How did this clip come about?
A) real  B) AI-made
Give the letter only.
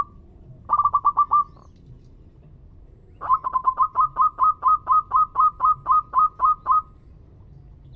A